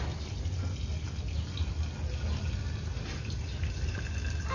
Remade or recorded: recorded